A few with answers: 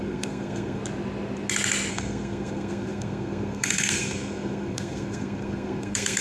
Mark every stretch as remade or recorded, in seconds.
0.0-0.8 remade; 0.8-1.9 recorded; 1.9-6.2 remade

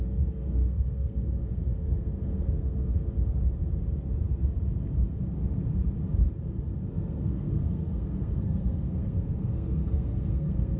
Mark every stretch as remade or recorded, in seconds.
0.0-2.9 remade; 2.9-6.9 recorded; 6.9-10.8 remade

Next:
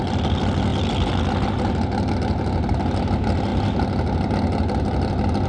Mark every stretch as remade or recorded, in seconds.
0.0-5.5 recorded

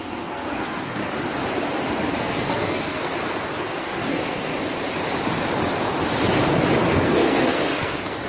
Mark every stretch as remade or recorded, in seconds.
0.0-1.0 remade; 1.0-2.2 recorded; 2.2-3.1 remade; 3.1-3.6 recorded; 3.6-4.5 remade; 4.5-6.9 recorded; 6.9-8.3 remade

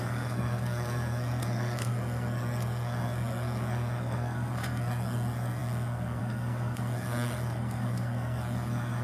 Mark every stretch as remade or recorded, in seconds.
0.0-9.0 remade

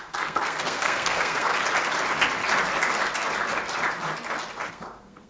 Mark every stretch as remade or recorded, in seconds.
0.0-1.5 remade; 1.5-4.7 recorded; 4.7-5.3 remade

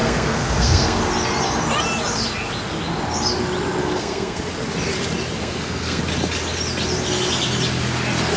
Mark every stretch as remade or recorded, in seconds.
0.0-1.0 remade; 1.0-3.8 recorded; 3.8-4.4 remade; 4.4-5.4 recorded; 5.4-6.0 remade; 6.0-8.4 recorded

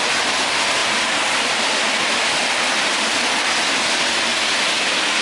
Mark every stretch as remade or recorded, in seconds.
0.0-5.2 recorded